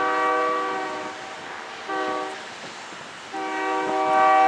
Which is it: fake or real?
real